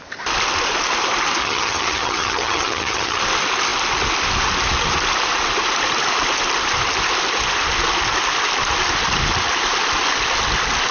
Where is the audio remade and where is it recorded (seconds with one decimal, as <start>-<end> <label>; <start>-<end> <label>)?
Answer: 0.0-1.4 recorded; 1.4-3.2 remade; 3.2-10.9 recorded